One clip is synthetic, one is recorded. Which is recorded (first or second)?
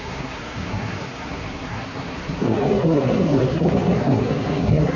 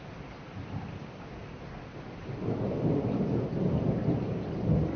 second